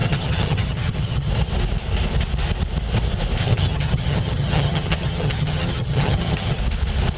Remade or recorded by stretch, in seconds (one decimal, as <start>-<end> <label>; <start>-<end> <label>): 0.0-1.3 remade; 1.3-3.4 recorded; 3.4-6.6 remade; 6.6-7.2 recorded